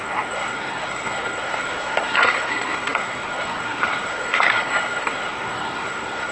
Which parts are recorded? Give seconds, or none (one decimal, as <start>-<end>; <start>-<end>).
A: none